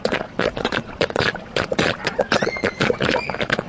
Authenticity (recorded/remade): remade